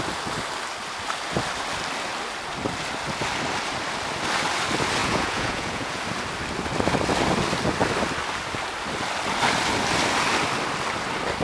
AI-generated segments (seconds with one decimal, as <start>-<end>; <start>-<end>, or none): 5.0-6.0